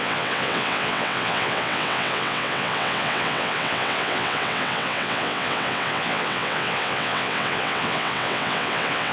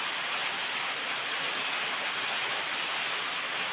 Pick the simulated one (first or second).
first